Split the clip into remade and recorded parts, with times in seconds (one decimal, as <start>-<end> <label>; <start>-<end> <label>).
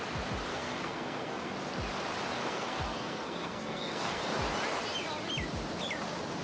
0.0-0.5 recorded; 0.5-1.5 remade; 1.5-2.4 recorded; 2.4-4.2 remade; 4.2-6.4 recorded